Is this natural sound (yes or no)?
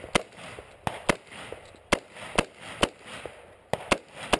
yes